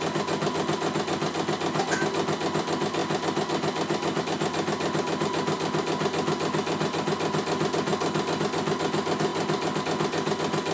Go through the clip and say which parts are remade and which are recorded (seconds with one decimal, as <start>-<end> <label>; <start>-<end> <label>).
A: 0.0-10.7 recorded